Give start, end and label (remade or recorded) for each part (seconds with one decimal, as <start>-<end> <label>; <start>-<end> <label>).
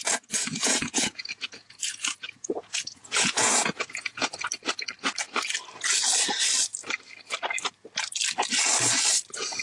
0.0-4.3 remade; 4.3-9.6 recorded